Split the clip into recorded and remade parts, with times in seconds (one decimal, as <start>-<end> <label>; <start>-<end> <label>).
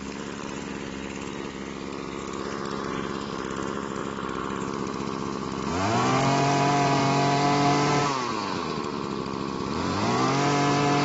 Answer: 0.0-4.0 recorded; 4.0-5.7 remade; 5.7-11.0 recorded